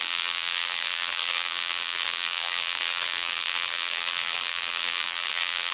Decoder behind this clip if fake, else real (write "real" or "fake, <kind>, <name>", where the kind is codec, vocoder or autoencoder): fake, vocoder, BigVGAN v2